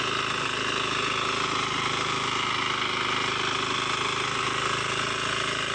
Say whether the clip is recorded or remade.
recorded